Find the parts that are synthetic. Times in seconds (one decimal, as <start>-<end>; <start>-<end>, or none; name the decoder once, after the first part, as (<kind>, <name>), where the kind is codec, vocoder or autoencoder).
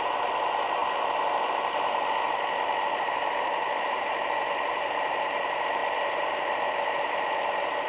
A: 0.0-5.8 (vocoder, BigVGAN v2); 6.7-7.9